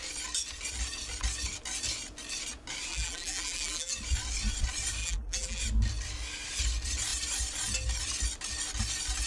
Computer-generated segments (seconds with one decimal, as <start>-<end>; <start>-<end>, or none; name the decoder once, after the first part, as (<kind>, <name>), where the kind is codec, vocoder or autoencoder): 2.9-3.9 (vocoder, BigVGAN v2); 5.0-5.6